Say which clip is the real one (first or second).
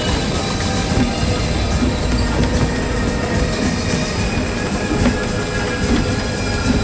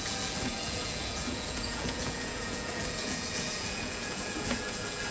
first